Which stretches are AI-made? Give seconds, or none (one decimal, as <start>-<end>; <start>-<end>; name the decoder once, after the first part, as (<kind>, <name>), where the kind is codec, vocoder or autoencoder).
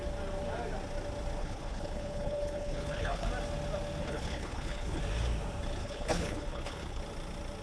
1.4-3.3 (codec, HILCodec); 4.0-5.0; 5.8-7.0